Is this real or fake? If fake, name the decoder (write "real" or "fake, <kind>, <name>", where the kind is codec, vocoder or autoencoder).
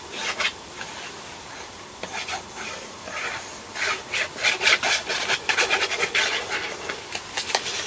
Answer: real